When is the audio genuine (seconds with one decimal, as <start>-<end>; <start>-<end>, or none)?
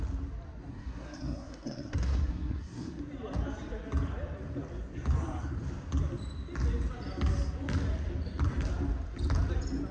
0.0-0.7; 3.0-9.9